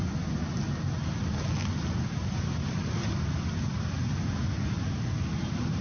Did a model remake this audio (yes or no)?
no